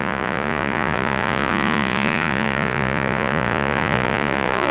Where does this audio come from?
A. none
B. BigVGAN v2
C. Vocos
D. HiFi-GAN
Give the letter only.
C